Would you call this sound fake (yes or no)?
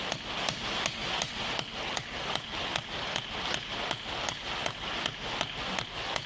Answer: no